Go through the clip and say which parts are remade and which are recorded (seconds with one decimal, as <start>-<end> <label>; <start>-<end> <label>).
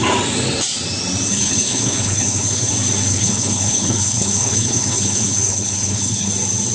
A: 0.0-1.3 recorded; 1.3-2.7 remade; 2.7-3.1 recorded; 3.1-6.3 remade; 6.3-6.7 recorded